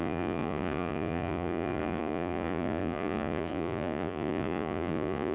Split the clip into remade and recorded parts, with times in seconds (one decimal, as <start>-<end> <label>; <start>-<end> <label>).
0.0-5.3 remade